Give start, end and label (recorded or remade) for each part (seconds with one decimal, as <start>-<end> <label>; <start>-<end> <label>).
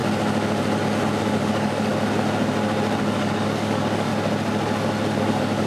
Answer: 0.0-1.2 recorded; 1.2-1.9 remade; 1.9-3.0 recorded; 3.0-4.1 remade; 4.1-5.2 recorded; 5.2-5.7 remade